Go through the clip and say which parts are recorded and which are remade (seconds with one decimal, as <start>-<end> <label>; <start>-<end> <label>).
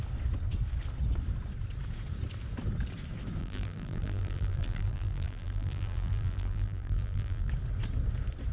0.0-3.4 recorded; 3.4-7.5 remade; 7.5-8.5 recorded